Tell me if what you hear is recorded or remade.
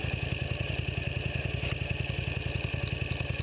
recorded